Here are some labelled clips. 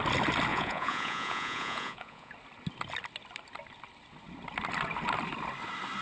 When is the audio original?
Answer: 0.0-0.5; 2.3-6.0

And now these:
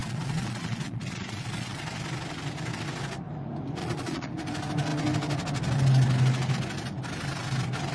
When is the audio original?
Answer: 1.8-3.8; 4.3-7.9

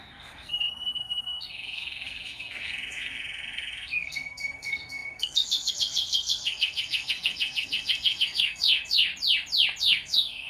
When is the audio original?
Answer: 9.1-9.8